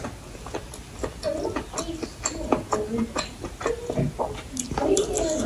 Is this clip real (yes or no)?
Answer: yes